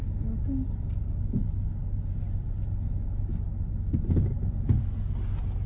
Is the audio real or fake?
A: real